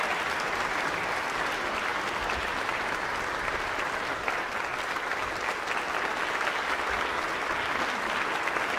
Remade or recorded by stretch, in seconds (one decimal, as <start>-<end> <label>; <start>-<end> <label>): 0.0-8.8 recorded